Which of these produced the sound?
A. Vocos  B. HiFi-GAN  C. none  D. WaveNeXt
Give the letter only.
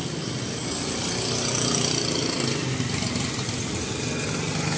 C